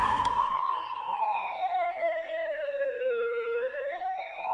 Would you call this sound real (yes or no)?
no